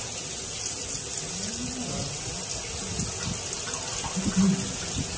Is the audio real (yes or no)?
yes